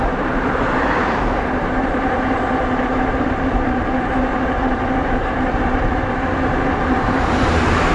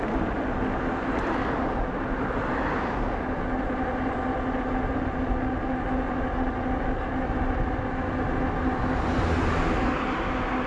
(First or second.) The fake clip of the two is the first